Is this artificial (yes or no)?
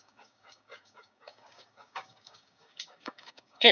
yes